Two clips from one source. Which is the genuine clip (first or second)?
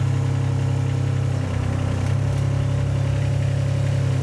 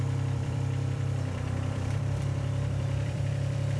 first